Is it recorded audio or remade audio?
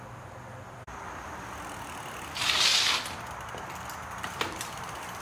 recorded